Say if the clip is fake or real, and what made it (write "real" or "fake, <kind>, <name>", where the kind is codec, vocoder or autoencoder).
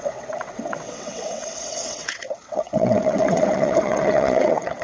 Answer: fake, vocoder, WaveNeXt